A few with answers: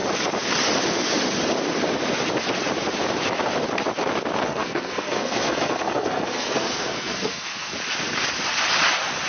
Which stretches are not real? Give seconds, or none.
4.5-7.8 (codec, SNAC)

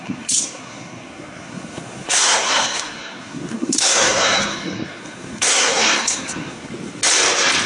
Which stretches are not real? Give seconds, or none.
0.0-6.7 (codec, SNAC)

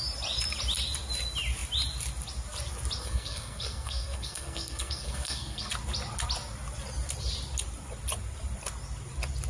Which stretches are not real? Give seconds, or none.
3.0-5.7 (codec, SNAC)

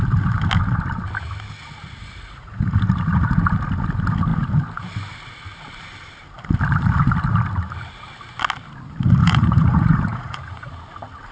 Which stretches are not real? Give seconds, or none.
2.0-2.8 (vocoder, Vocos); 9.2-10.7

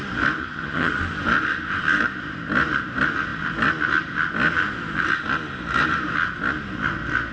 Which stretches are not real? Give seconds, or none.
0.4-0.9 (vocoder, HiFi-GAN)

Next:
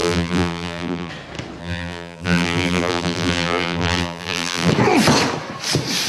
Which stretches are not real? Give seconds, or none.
0.0-1.1 (vocoder, BigVGAN v2); 1.6-4.7